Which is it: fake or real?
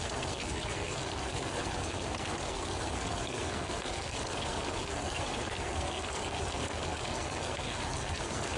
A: fake